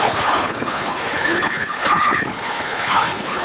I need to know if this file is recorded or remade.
remade